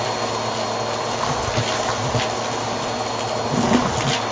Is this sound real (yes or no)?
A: yes